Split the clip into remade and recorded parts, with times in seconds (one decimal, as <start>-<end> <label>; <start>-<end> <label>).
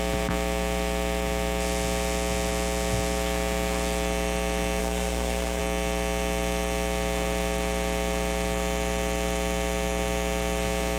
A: 0.0-4.8 recorded; 4.8-5.6 remade; 5.6-11.0 recorded